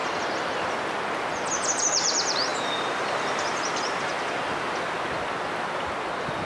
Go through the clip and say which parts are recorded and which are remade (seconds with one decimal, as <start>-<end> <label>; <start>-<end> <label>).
0.0-1.7 recorded; 1.7-4.1 remade; 4.1-6.5 recorded